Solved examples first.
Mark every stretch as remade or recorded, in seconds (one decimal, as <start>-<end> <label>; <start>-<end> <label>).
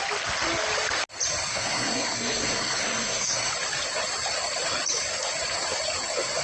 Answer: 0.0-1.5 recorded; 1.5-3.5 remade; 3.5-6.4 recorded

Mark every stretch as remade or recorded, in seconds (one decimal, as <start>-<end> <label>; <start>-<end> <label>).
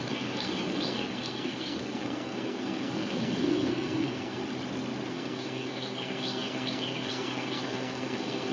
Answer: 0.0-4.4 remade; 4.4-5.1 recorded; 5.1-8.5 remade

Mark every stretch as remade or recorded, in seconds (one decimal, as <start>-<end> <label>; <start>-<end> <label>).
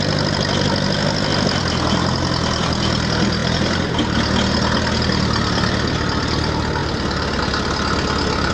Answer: 0.0-1.6 recorded; 1.6-2.7 remade; 2.7-6.8 recorded; 6.8-7.4 remade; 7.4-8.5 recorded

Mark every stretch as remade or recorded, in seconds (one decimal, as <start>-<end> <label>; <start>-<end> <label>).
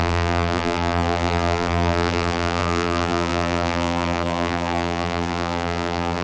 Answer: 0.0-6.2 remade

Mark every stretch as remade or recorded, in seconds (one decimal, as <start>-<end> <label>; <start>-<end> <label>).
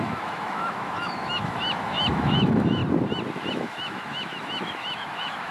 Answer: 0.0-2.8 remade; 2.8-3.5 recorded; 3.5-5.5 remade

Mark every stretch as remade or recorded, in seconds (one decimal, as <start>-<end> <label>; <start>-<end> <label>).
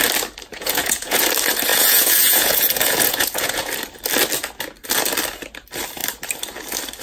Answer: 0.0-0.5 recorded; 0.5-1.2 remade; 1.2-1.7 recorded; 1.7-3.7 remade; 3.7-7.0 recorded